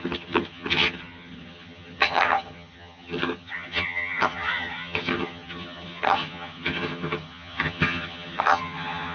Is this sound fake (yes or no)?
yes